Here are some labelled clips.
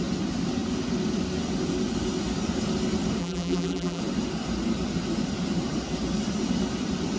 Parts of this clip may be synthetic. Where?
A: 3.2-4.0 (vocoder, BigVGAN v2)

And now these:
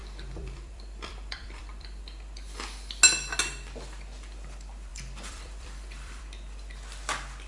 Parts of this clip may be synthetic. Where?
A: 0.0-2.0 (vocoder, BigVGAN v2); 4.9-6.2

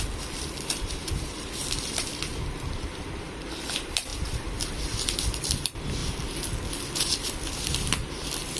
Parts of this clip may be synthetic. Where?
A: 0.0-6.0 (vocoder, BigVGAN v2); 7.0-8.6

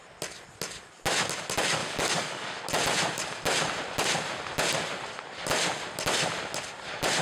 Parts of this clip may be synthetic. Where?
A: 1.8-2.6 (codec, DAC)

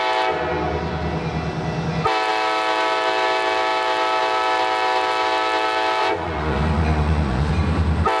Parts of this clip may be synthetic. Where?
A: 6.0-7.5 (vocoder, Vocos)

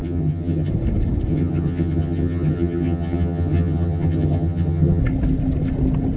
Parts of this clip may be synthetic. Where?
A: 0.0-0.7 (vocoder, HiFi-GAN); 1.3-5.0

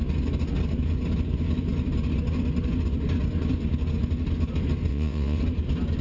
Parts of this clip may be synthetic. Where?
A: 4.9-5.4 (vocoder, WaveNeXt)

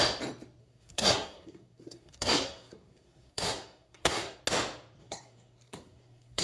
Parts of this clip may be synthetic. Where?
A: 0.6-4.4 (codec, SNAC); 5.0-6.4